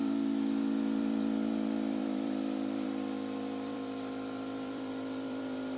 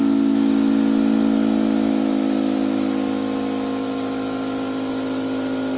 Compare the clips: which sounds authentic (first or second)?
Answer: second